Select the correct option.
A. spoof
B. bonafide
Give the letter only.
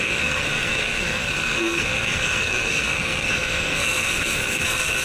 A